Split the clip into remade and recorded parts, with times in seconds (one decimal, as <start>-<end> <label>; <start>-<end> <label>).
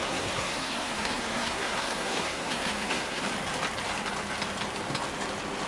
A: 0.0-3.2 remade; 3.2-5.7 recorded